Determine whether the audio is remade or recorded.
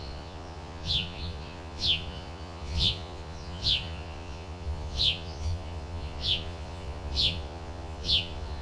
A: remade